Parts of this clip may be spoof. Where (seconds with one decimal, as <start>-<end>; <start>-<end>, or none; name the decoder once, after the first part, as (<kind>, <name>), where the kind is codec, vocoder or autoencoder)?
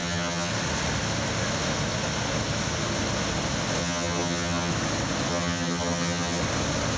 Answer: 0.0-0.5 (vocoder, HiFi-GAN); 3.8-4.7; 5.3-6.4